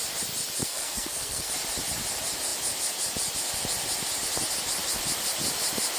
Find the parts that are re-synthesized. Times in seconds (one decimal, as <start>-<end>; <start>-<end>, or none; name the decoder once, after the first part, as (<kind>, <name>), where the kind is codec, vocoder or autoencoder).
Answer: 0.6-1.5 (codec, SNAC)